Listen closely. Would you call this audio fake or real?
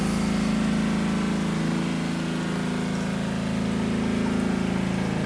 real